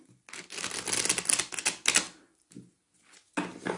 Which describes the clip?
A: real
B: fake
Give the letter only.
A